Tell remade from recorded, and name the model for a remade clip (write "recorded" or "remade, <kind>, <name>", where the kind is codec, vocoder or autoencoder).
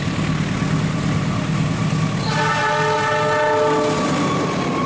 recorded